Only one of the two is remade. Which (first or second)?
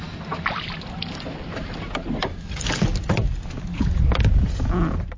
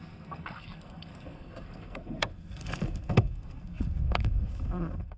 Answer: second